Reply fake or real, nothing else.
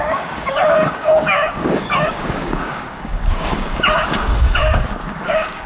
fake